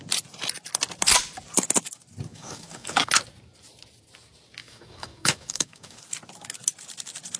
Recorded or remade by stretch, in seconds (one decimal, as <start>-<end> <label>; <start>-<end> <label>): 0.0-2.3 recorded; 2.3-3.1 remade; 3.1-4.6 recorded; 4.6-6.0 remade; 6.0-7.4 recorded